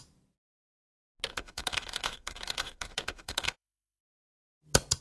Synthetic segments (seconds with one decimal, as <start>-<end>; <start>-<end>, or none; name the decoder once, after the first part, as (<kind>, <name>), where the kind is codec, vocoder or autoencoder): 1.3-4.0 (autoencoder, DAC-VAE)